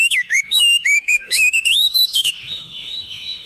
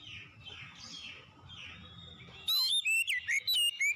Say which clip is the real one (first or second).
second